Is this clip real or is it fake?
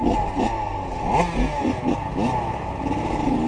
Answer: real